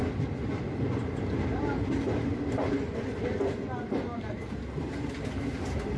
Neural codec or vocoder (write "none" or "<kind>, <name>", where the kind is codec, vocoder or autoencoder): none